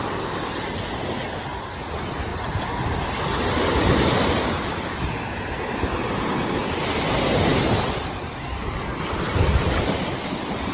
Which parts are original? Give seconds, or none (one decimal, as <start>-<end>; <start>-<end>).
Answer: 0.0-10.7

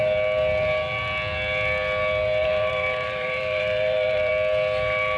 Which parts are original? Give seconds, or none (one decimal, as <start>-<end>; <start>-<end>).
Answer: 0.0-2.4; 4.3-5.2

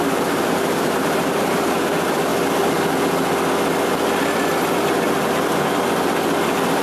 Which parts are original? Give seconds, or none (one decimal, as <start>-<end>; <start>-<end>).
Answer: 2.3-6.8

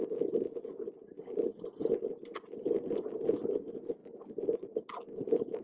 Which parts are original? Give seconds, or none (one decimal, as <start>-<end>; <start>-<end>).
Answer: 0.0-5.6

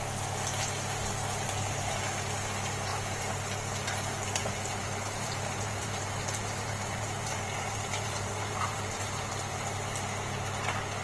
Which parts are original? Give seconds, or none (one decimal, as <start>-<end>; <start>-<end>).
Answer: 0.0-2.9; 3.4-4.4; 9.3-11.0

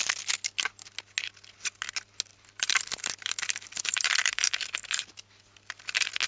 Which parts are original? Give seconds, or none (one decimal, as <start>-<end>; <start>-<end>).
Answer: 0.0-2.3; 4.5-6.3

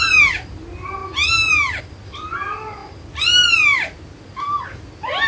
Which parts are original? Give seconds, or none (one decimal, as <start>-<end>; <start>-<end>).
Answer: 0.0-5.3